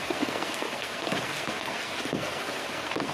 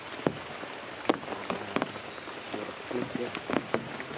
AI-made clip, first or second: first